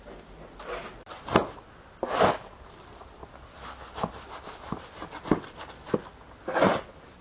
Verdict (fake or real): real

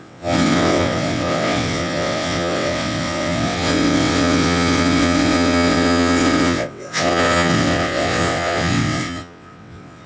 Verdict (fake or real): fake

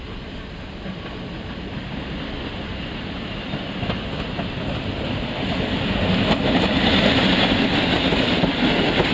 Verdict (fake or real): real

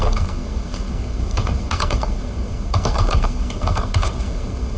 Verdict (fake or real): fake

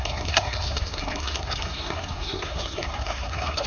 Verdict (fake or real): fake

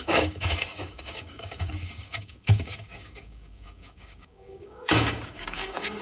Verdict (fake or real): fake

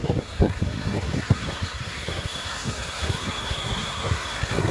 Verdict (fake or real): fake